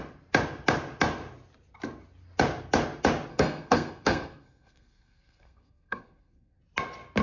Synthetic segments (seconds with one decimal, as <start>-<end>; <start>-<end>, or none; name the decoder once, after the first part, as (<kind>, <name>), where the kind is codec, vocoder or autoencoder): 3.3-6.6 (codec, SNAC)